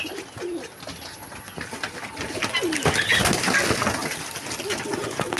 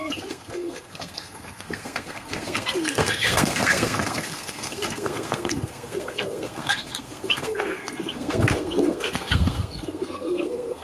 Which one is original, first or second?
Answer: first